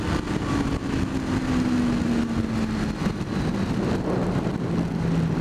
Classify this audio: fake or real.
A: real